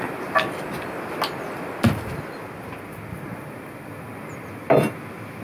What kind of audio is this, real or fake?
real